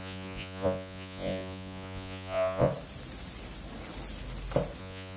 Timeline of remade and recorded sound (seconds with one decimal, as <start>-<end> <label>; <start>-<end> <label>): 0.0-2.7 remade; 2.7-4.8 recorded; 4.8-5.2 remade